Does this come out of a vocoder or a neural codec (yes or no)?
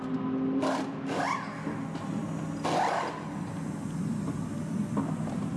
no